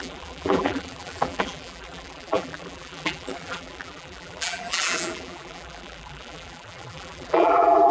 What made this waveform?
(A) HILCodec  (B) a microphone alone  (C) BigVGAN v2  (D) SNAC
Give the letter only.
C